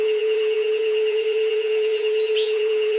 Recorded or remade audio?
remade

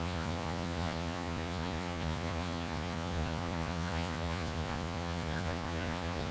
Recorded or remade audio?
remade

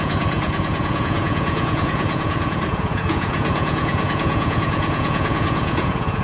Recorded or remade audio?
remade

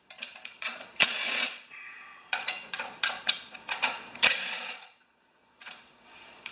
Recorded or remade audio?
remade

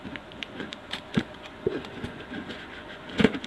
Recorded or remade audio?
remade